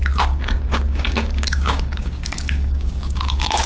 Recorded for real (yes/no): no